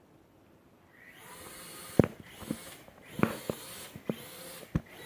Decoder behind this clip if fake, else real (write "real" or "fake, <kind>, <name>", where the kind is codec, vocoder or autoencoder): real